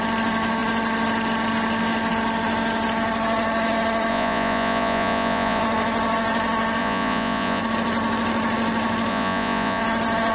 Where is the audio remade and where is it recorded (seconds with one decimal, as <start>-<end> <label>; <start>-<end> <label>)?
0.0-4.1 recorded; 4.1-5.6 remade; 5.6-6.8 recorded; 6.8-7.6 remade; 7.6-9.1 recorded; 9.1-9.8 remade; 9.8-10.3 recorded